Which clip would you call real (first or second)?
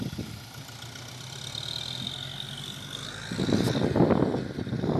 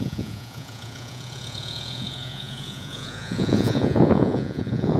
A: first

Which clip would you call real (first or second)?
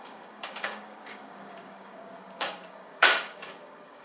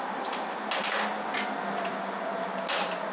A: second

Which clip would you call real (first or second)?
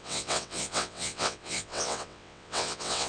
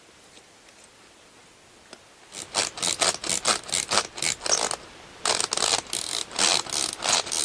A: second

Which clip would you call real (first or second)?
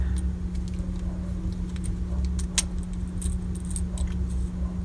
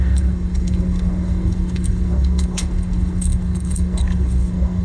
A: first